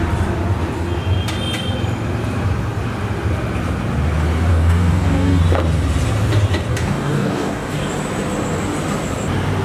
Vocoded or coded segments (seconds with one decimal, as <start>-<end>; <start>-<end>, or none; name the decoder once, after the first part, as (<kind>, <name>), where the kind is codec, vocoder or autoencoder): 4.5-5.4 (codec, DAC); 6.7-7.9